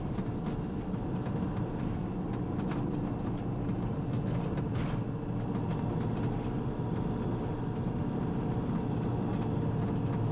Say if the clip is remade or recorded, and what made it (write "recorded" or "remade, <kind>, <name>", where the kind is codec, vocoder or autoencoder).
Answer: recorded